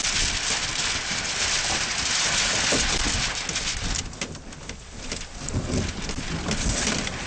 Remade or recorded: recorded